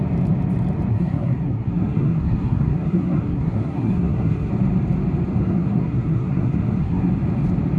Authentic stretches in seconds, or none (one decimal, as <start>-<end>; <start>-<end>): 0.0-0.9; 4.5-5.4; 7.1-7.8